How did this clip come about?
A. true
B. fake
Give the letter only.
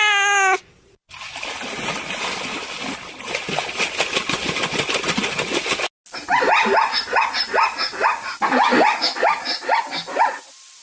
A